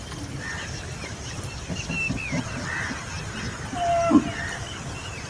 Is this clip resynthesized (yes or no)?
yes